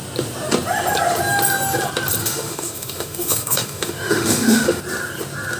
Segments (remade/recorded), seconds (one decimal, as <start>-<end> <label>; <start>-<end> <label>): 0.0-2.2 recorded; 2.2-4.8 remade; 4.8-5.6 recorded